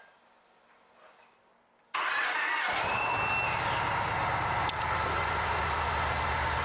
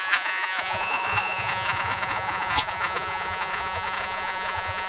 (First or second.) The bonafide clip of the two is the first